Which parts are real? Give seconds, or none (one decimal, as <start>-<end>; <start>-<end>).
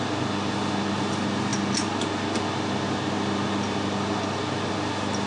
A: 0.0-5.3